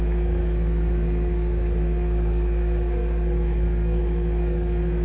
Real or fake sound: fake